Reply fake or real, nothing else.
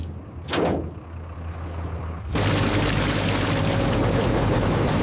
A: real